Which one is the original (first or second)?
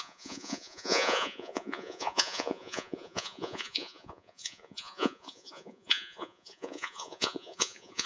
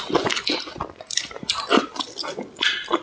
second